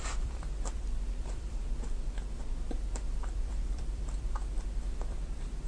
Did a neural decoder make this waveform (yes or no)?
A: yes